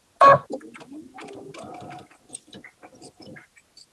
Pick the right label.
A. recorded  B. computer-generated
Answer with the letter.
A